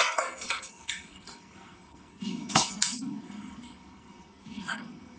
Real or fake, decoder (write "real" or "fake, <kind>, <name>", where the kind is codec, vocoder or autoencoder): fake, codec, SNAC